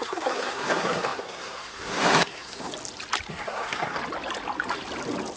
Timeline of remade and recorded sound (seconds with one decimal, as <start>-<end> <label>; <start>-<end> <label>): 0.0-2.7 remade; 2.7-3.3 recorded; 3.3-4.0 remade; 4.0-5.4 recorded